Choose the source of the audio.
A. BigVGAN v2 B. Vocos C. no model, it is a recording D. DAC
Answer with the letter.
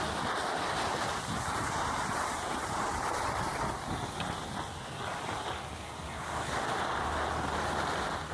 C